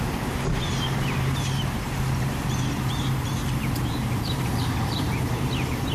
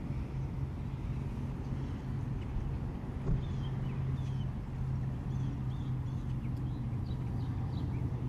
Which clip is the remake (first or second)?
first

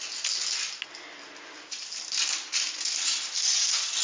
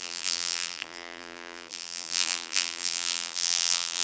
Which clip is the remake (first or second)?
second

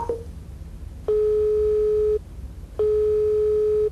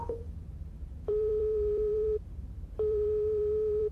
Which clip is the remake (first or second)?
second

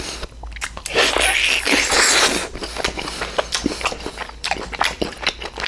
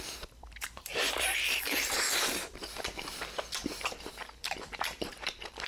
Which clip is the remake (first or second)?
second